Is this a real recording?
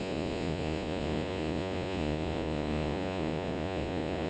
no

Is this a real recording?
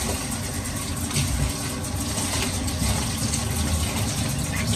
yes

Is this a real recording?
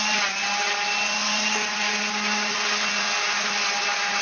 yes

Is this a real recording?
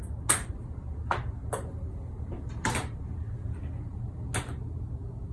yes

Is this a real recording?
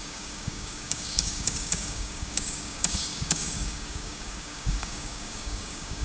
no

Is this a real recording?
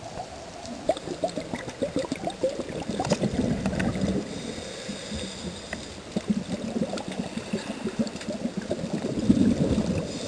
yes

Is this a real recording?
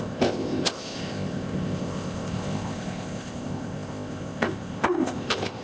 no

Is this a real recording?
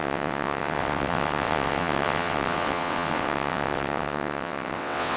no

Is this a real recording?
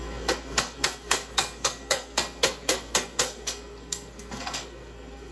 no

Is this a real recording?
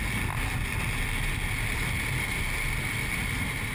yes